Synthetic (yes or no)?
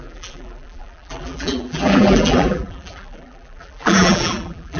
yes